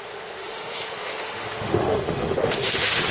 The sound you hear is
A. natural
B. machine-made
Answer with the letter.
B